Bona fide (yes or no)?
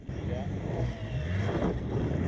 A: yes